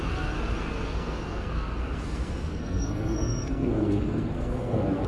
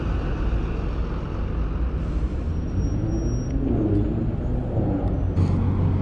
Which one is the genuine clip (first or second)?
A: second